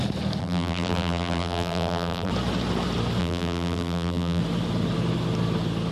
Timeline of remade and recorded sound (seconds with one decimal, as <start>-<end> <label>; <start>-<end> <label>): 0.0-0.4 recorded; 0.4-2.3 remade; 2.3-3.2 recorded; 3.2-4.4 remade; 4.4-5.9 recorded